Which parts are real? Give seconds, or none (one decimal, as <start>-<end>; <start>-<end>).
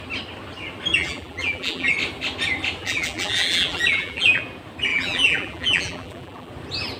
0.0-0.9; 1.9-2.8; 4.4-4.9; 6.5-7.0